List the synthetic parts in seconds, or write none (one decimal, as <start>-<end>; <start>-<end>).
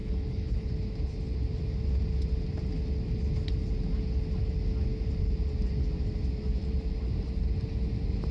0.0-0.7